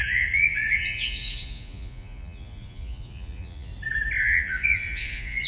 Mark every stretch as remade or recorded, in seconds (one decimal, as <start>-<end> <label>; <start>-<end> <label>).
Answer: 0.0-3.7 remade; 3.7-4.2 recorded; 4.2-5.5 remade